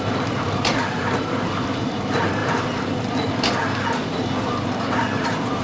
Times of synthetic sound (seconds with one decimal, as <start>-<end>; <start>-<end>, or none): none